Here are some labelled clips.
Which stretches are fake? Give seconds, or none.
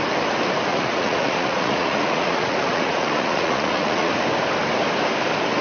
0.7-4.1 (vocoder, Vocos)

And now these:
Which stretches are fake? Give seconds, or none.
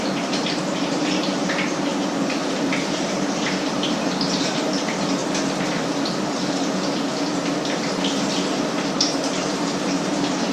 0.0-1.9 (vocoder, BigVGAN v2); 2.5-5.2; 8.9-10.5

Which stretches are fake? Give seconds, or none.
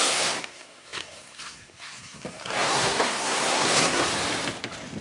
0.0-4.1 (codec, SNAC)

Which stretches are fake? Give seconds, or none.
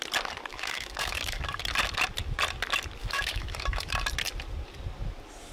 0.5-1.6 (codec, DAC); 3.0-3.9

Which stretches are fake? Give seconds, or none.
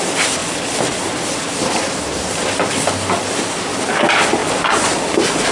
none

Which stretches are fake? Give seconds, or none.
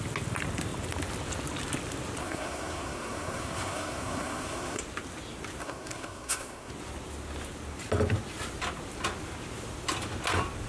2.2-4.8 (codec, SNAC); 5.6-6.7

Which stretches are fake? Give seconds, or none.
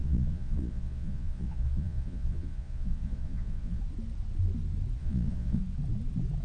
0.0-3.8 (vocoder, Vocos); 5.0-5.6